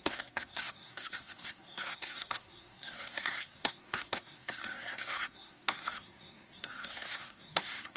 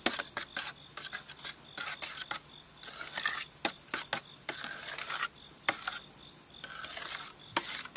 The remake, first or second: first